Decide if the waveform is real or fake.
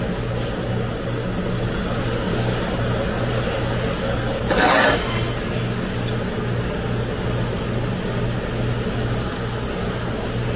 real